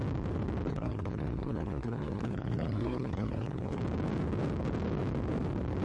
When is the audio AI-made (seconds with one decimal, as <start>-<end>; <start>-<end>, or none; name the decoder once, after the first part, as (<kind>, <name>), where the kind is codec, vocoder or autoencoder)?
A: 0.7-3.8 (codec, SNAC)